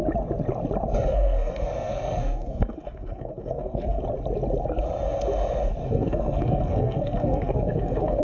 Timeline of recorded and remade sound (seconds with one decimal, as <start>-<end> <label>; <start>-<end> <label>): 0.0-1.1 recorded; 1.1-4.0 remade; 4.0-5.8 recorded; 5.8-8.2 remade